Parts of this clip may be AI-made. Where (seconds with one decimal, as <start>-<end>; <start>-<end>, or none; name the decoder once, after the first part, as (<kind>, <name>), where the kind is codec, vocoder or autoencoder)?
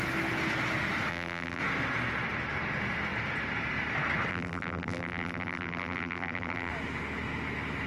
1.1-1.6 (vocoder, BigVGAN v2); 4.3-6.7